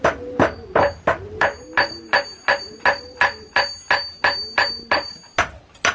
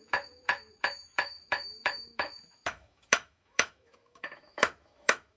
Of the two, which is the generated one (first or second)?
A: second